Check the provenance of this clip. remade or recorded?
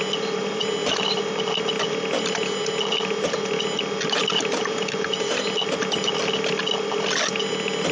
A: recorded